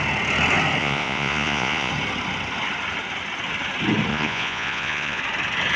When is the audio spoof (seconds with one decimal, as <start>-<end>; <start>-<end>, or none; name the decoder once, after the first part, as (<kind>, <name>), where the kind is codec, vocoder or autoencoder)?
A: 0.8-1.9 (vocoder, Vocos); 4.1-5.2